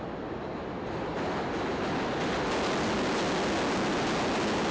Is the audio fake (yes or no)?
no